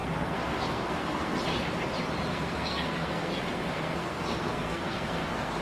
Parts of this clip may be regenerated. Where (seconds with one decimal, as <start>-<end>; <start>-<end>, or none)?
0.0-1.4; 2.3-5.6